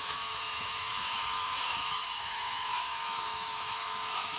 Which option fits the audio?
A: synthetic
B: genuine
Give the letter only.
A